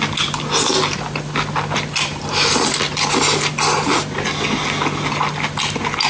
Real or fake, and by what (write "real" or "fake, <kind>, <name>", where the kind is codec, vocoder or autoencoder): real